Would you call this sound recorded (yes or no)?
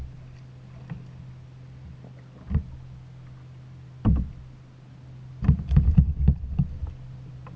yes